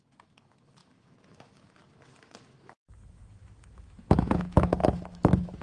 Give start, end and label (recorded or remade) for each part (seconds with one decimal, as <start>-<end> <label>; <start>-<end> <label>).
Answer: 0.0-5.6 remade